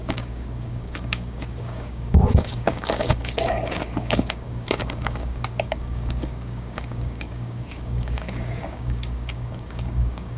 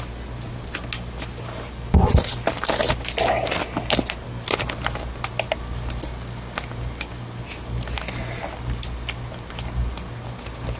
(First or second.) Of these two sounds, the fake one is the first